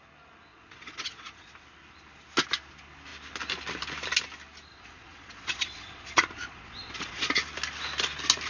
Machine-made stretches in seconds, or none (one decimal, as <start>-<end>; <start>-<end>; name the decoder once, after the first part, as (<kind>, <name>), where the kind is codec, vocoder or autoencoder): 0.5-1.5 (vocoder, Vocos); 4.7-7.3